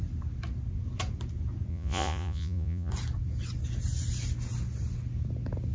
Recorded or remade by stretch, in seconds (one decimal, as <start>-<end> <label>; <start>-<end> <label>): 0.0-1.7 recorded; 1.7-2.9 remade; 2.9-5.7 recorded